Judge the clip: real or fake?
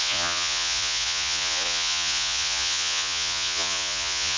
fake